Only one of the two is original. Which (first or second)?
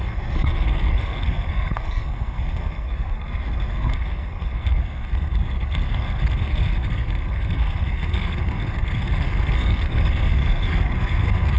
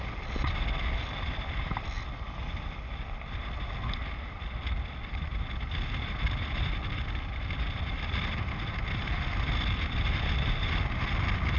second